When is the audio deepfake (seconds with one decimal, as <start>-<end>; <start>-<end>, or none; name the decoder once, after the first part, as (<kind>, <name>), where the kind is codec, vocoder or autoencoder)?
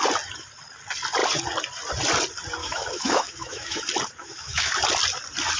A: 2.6-3.8 (autoencoder, DAC-VAE); 4.2-4.7